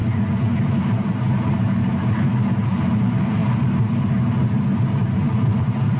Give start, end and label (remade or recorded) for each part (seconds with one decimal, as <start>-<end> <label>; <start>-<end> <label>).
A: 0.0-0.7 recorded; 0.7-6.0 remade